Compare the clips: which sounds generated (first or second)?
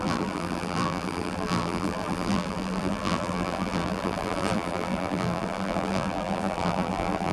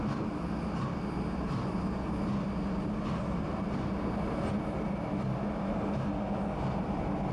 first